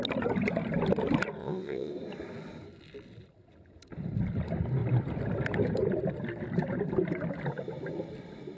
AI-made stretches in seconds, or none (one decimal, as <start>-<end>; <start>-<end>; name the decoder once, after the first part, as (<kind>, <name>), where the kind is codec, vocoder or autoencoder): 1.4-1.9 (vocoder, WaveNeXt)